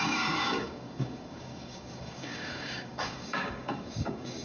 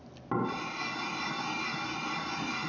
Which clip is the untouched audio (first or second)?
second